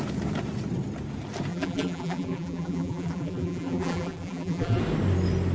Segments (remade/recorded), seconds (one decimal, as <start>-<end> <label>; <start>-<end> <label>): 0.0-1.5 recorded; 1.5-4.8 remade; 4.8-5.5 recorded